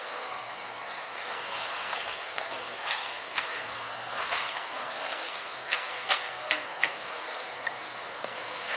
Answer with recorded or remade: remade